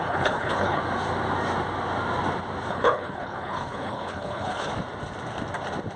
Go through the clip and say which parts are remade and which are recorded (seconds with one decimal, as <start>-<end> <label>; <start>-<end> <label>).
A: 0.0-0.8 remade; 0.8-2.7 recorded; 2.7-4.7 remade; 4.7-6.0 recorded